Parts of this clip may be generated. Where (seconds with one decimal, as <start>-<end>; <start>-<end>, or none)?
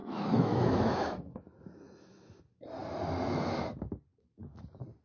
0.0-2.4